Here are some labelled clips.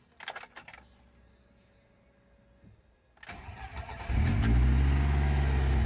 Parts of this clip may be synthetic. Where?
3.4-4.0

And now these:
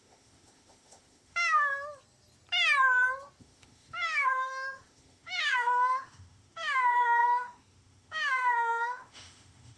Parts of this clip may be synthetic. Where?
0.0-1.7; 3.4-9.8